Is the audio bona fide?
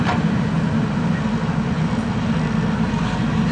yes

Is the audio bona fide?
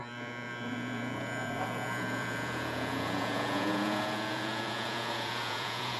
no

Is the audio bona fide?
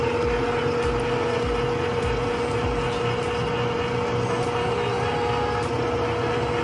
yes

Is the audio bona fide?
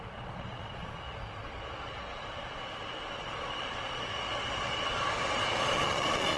no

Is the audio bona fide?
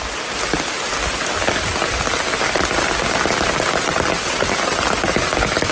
yes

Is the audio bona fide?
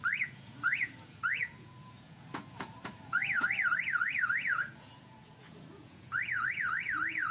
no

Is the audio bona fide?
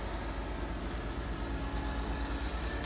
yes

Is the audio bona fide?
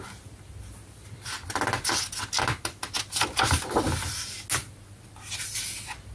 yes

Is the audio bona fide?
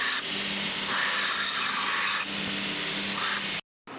yes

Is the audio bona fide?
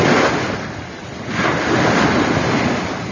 yes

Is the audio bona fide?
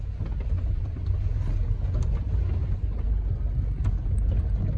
yes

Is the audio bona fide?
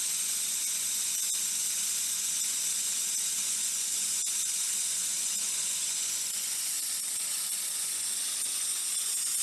no